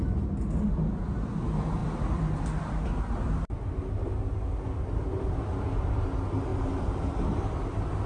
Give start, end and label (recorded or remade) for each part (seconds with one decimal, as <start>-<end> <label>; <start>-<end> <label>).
0.0-1.8 recorded; 1.8-3.8 remade; 3.8-6.5 recorded; 6.5-7.4 remade; 7.4-8.1 recorded